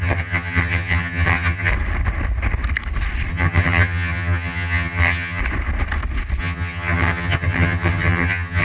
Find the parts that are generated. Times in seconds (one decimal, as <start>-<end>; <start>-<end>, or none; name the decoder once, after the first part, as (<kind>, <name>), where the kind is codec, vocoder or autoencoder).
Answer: 0.0-1.7 (vocoder, HiFi-GAN); 3.3-5.4; 6.4-8.6